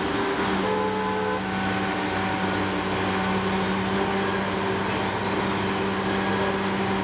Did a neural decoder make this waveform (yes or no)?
no